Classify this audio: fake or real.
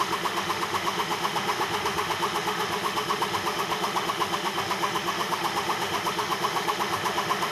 fake